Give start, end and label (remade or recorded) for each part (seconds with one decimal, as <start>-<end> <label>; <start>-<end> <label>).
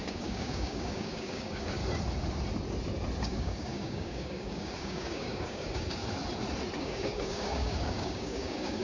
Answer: 0.0-1.8 remade; 1.8-3.2 recorded; 3.2-6.0 remade; 6.0-6.8 recorded; 6.8-8.8 remade